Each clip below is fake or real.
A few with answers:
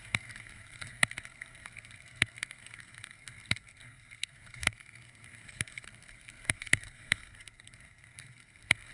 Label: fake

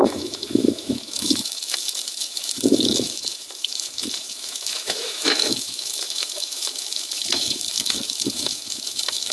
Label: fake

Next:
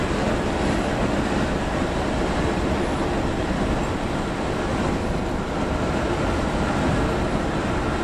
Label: real